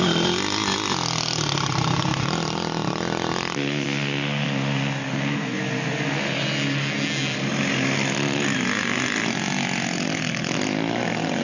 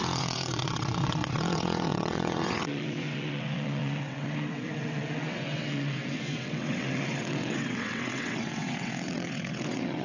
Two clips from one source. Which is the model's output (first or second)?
second